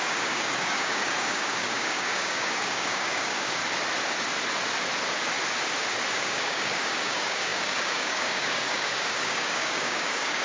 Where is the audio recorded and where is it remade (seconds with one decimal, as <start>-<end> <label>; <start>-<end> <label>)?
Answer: 0.0-3.6 remade; 3.6-6.1 recorded; 6.1-10.4 remade